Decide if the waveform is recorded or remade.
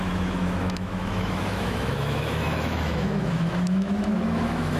remade